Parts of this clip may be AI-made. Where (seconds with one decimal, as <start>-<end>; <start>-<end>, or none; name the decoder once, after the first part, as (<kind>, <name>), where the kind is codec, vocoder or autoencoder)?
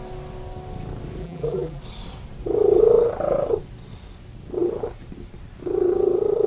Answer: 1.2-1.8 (vocoder, BigVGAN v2)